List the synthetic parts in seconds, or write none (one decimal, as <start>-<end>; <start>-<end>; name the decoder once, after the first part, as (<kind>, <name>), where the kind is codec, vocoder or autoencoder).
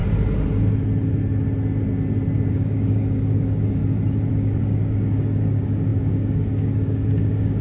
2.5-3.8 (codec, DAC); 4.3-7.6